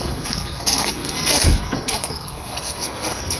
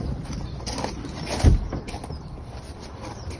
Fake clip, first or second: first